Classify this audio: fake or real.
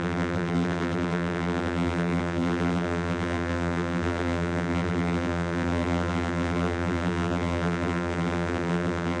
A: fake